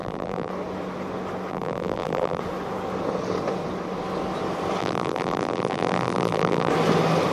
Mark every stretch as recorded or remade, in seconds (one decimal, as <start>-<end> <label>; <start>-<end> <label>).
0.0-0.5 remade; 0.5-1.5 recorded; 1.5-2.4 remade; 2.4-4.8 recorded; 4.8-6.7 remade; 6.7-7.3 recorded